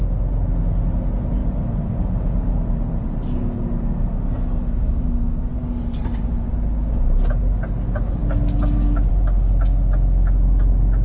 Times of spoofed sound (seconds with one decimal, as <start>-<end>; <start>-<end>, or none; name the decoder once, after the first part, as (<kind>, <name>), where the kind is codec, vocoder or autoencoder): none

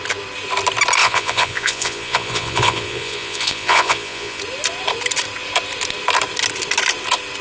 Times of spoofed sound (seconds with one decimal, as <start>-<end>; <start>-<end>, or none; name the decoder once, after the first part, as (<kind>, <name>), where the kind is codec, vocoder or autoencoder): 1.0-4.4 (vocoder, Vocos)

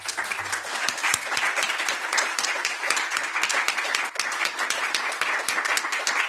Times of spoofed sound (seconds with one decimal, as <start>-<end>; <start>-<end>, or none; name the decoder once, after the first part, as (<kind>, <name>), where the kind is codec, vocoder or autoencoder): none

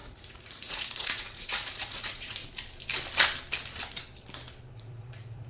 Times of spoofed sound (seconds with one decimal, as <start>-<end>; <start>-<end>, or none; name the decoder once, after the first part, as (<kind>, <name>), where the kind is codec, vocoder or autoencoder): 0.0-2.4 (vocoder, Vocos); 4.7-5.5

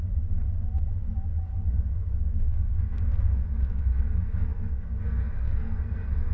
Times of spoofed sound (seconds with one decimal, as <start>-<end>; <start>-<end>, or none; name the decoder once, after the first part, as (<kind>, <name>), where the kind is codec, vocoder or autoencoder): 1.4-6.3 (codec, SNAC)

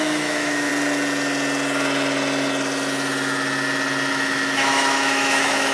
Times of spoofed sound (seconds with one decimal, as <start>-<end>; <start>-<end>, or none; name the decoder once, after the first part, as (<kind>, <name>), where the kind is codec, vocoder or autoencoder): 0.0-0.7 (autoencoder, DAC-VAE); 4.1-5.7

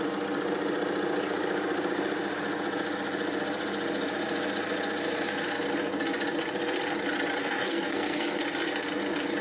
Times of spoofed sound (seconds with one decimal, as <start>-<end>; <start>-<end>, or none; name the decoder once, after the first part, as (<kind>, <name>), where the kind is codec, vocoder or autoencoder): 7.4-8.4 (codec, SNAC)